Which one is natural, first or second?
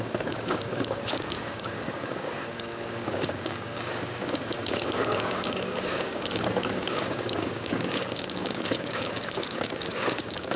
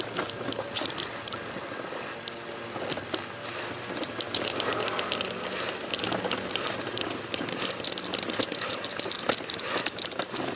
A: second